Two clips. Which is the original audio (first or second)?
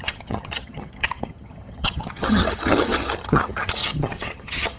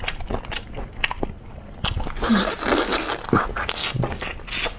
second